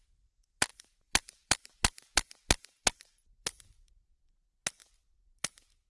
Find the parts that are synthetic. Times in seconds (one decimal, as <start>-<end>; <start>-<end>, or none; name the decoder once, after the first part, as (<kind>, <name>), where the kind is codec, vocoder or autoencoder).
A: 0.7-4.2 (vocoder, BigVGAN v2); 4.8-5.9